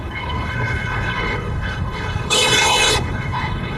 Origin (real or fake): fake